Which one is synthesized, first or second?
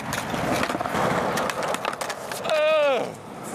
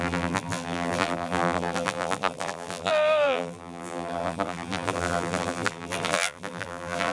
second